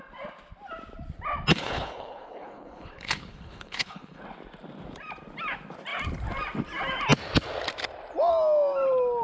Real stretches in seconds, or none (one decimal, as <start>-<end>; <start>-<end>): 0.0-1.5; 4.2-9.2